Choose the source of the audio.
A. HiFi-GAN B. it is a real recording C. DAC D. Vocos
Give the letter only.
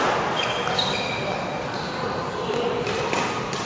B